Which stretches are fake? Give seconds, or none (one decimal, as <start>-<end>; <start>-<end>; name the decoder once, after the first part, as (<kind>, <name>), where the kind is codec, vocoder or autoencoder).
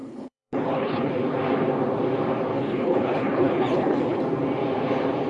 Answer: 0.0-1.1 (codec, HILCodec); 2.5-4.2